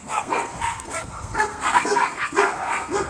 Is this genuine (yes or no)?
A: no